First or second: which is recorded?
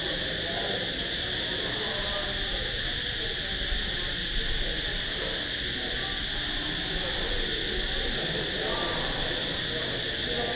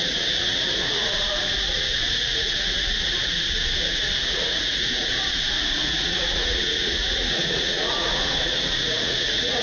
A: first